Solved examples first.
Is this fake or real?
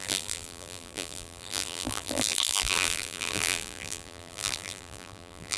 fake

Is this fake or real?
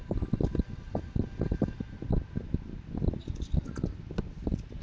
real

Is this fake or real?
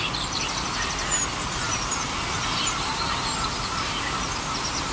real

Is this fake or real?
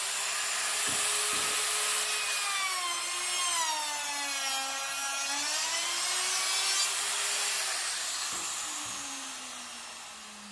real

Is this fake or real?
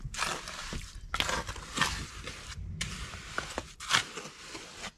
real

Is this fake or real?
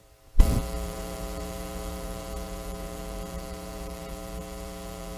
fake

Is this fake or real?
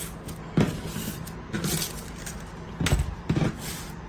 real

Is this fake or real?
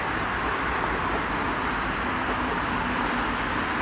real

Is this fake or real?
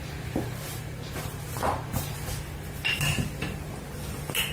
fake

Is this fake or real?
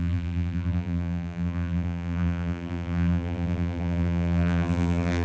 fake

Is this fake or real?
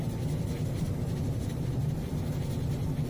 fake